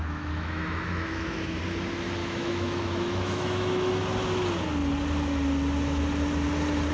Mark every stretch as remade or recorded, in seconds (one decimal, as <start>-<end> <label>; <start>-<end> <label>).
0.0-1.6 remade; 1.6-2.2 recorded; 2.2-3.9 remade; 3.9-6.9 recorded